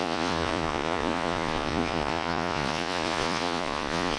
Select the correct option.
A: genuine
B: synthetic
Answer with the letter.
B